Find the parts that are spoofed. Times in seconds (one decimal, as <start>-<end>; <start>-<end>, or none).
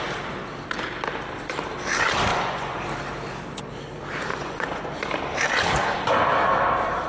2.3-2.8; 4.3-4.9